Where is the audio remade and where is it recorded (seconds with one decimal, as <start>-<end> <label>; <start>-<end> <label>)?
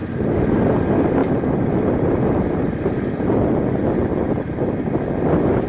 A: 0.0-5.7 recorded